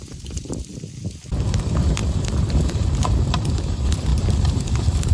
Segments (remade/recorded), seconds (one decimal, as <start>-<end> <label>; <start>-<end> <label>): 0.0-0.7 remade; 0.7-1.5 recorded; 1.5-5.1 remade